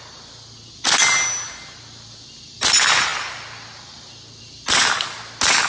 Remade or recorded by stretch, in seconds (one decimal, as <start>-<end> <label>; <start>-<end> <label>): 0.0-5.7 recorded